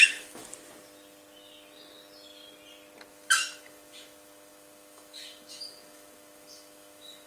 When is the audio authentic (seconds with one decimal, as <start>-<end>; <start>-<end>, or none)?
0.4-3.1

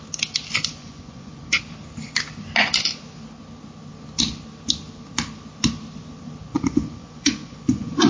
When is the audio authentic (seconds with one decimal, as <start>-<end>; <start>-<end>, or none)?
0.0-0.8; 1.6-6.5

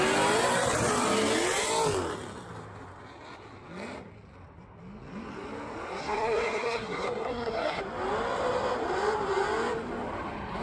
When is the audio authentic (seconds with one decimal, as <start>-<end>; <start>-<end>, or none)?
0.0-6.0; 7.8-10.6

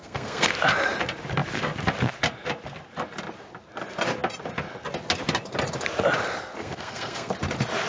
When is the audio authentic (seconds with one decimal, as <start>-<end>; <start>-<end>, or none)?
0.5-6.6; 7.3-7.9

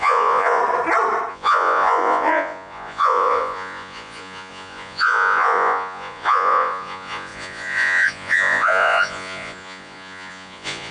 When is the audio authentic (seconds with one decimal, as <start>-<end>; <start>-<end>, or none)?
0.6-1.3